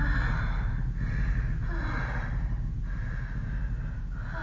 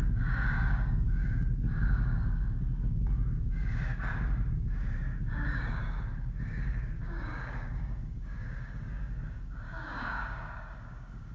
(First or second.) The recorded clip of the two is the first